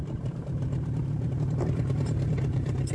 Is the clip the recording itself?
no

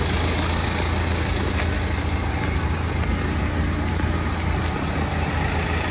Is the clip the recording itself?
yes